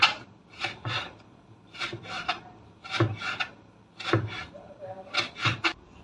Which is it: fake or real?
real